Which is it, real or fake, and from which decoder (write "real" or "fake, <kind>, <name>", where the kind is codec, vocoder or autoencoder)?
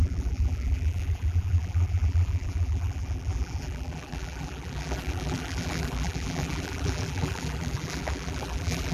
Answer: fake, vocoder, BigVGAN v2